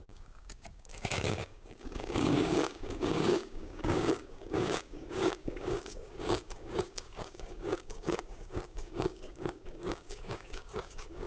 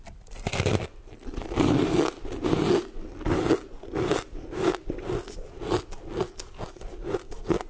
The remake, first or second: first